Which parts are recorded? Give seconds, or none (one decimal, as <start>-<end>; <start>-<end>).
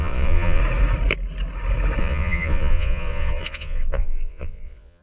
0.6-2.0